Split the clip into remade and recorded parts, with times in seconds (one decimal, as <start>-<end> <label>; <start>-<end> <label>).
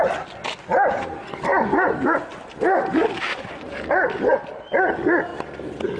0.0-3.3 recorded; 3.3-3.9 remade; 3.9-5.3 recorded; 5.3-6.0 remade